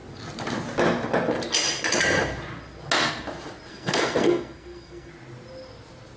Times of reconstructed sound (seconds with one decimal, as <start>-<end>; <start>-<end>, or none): 3.7-5.1